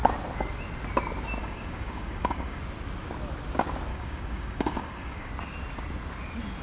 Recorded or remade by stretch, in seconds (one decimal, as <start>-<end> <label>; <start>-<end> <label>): 0.0-1.4 recorded; 1.4-2.6 remade; 2.6-3.9 recorded; 3.9-5.3 remade; 5.3-6.6 recorded